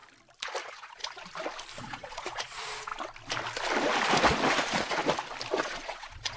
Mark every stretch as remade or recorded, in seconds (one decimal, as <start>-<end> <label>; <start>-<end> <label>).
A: 0.0-0.6 recorded; 0.6-1.0 remade; 1.0-1.8 recorded; 1.8-2.9 remade; 2.9-4.6 recorded; 4.6-5.0 remade; 5.0-5.6 recorded; 5.6-6.4 remade